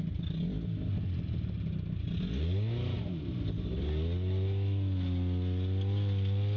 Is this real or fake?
real